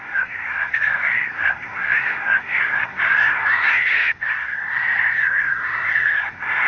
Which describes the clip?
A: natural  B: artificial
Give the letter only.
B